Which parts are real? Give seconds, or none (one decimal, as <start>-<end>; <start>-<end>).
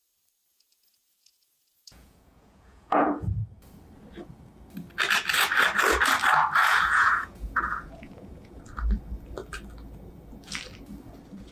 0.0-0.5; 3.4-6.6; 8.6-11.5